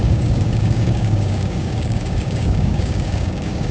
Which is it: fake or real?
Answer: fake